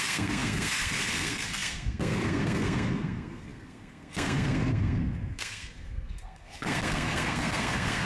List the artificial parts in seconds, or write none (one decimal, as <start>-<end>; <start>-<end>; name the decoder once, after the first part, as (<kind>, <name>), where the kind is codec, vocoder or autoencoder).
0.0-8.1 (codec, SNAC)